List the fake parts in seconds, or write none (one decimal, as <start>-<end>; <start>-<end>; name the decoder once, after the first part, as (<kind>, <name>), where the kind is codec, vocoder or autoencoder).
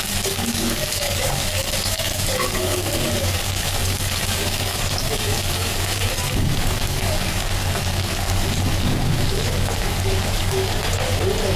0.0-10.8 (codec, DAC)